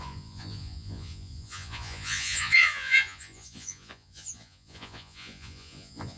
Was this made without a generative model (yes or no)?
no